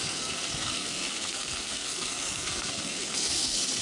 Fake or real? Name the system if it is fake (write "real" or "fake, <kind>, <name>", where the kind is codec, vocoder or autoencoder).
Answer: fake, codec, SNAC